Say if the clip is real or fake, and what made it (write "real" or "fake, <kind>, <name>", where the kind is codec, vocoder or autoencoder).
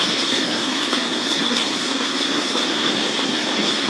fake, codec, SNAC